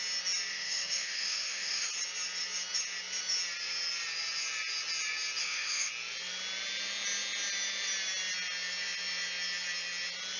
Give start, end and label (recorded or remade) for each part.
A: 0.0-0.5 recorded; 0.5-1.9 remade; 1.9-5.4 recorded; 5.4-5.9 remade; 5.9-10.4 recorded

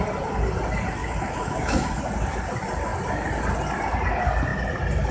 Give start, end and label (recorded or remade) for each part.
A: 0.0-1.0 recorded; 1.0-2.0 remade; 2.0-5.1 recorded

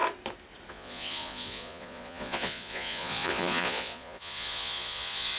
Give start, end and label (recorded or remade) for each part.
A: 0.0-0.7 recorded; 0.7-5.4 remade

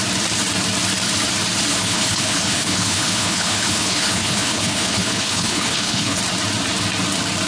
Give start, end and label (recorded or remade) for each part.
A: 0.0-1.7 recorded; 1.7-6.2 remade; 6.2-7.5 recorded

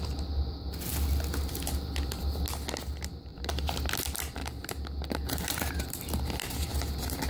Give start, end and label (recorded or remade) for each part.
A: 0.0-3.3 recorded; 3.3-3.9 remade; 3.9-4.4 recorded; 4.4-6.3 remade; 6.3-6.7 recorded; 6.7-7.3 remade

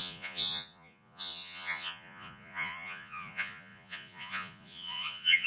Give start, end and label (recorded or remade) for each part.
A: 0.0-5.5 remade